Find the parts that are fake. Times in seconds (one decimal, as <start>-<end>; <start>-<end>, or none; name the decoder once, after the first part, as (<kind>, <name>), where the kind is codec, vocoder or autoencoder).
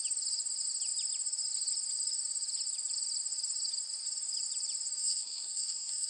5.0-6.1 (codec, SNAC)